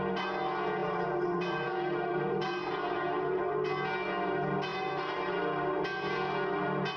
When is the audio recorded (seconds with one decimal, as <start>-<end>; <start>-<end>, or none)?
0.0-0.8; 3.4-4.7; 5.3-7.0